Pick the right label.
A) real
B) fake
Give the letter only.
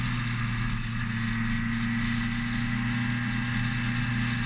A